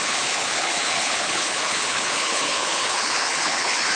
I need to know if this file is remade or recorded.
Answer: remade